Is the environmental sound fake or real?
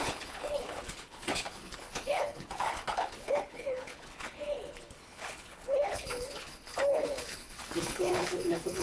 fake